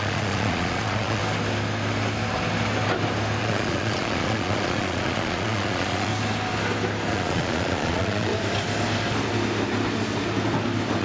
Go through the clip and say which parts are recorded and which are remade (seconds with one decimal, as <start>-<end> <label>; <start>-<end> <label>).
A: 0.0-1.2 remade; 1.2-3.4 recorded; 3.4-6.1 remade; 6.1-7.1 recorded; 7.1-8.3 remade; 8.3-11.0 recorded